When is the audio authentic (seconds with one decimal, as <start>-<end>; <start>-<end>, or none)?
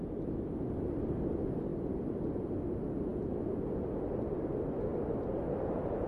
0.0-1.7; 2.6-6.1